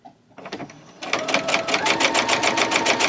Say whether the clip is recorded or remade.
recorded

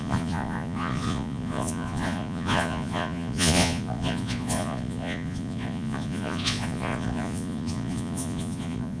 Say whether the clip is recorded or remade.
remade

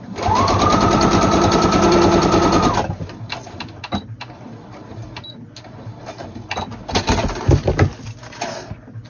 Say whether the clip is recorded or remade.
recorded